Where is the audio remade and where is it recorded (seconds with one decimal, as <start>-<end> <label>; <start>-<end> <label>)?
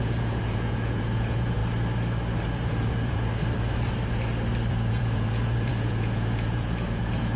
0.0-1.6 remade; 1.6-2.5 recorded; 2.5-3.3 remade; 3.3-4.7 recorded; 4.7-7.4 remade